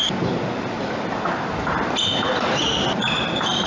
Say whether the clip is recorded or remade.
recorded